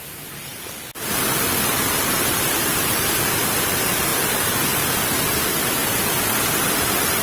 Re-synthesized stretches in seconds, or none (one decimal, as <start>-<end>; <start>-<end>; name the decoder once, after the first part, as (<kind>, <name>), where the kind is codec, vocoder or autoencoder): none